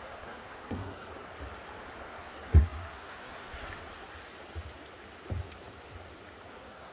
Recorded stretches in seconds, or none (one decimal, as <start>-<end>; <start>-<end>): 1.1-2.0; 3.8-6.5